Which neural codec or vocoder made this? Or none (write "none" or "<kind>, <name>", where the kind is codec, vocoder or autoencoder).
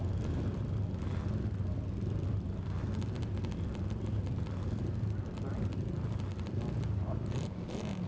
none